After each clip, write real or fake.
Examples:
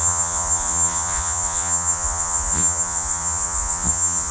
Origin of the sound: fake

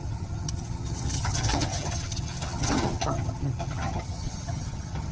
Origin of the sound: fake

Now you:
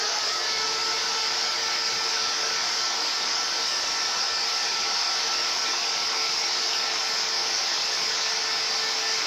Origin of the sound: fake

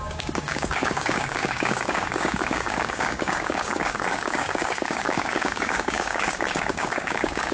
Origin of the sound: fake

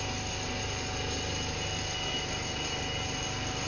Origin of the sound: real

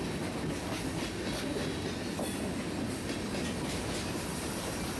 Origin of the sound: real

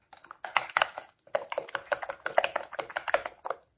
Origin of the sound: real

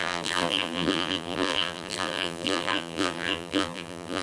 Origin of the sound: fake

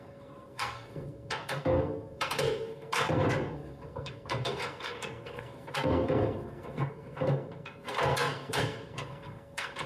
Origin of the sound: fake